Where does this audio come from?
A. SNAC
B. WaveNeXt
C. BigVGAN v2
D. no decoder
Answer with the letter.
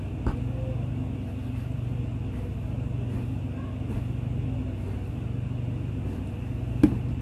D